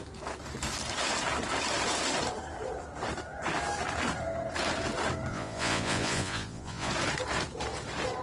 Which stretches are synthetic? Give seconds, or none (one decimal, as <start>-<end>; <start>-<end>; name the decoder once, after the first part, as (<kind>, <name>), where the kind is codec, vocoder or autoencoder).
5.3-6.9 (vocoder, Vocos)